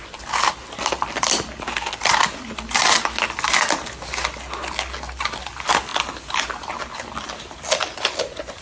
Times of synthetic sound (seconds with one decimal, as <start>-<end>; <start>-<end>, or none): none